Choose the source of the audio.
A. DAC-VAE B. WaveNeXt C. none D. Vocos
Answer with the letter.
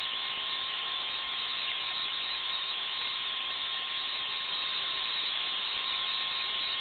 A